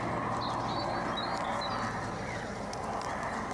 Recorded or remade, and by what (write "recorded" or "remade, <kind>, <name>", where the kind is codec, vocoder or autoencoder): recorded